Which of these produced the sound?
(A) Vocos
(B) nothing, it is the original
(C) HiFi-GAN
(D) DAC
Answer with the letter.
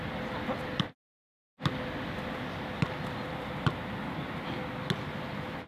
B